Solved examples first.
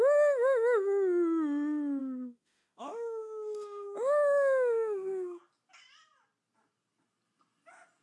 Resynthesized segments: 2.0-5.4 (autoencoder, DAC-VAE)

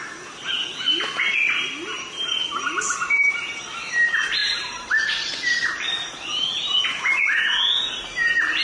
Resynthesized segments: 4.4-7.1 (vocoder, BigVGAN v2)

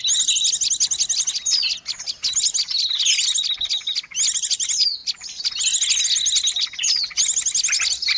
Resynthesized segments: none

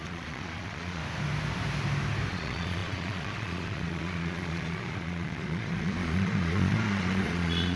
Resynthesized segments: 0.0-1.0 (vocoder, Vocos); 2.3-7.8

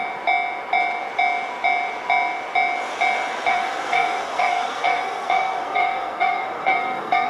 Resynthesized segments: 3.5-7.3 (codec, SNAC)